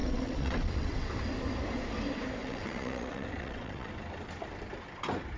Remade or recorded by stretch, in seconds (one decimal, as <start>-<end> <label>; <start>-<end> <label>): 0.0-1.1 remade; 1.1-2.4 recorded; 2.4-3.9 remade; 3.9-5.4 recorded